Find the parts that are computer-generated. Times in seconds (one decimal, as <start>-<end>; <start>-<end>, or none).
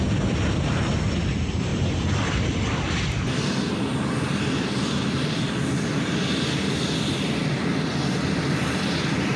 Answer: none